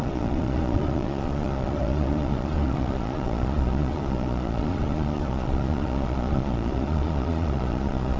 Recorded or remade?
remade